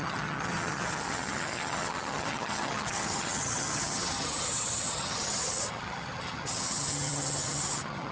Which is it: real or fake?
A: fake